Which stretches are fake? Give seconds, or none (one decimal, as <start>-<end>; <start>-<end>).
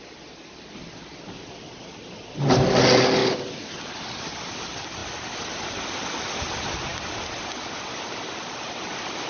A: none